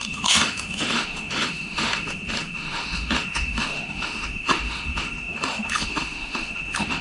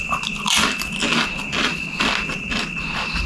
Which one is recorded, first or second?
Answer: second